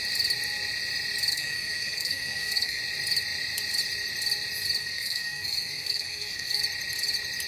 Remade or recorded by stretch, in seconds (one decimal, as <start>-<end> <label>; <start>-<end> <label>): 0.0-1.3 recorded; 1.3-2.8 remade; 2.8-4.8 recorded; 4.8-6.6 remade; 6.6-7.5 recorded